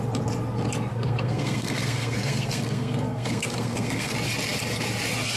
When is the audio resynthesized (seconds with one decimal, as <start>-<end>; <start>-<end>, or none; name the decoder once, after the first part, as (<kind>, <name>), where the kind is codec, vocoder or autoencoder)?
0.9-4.1 (codec, SNAC)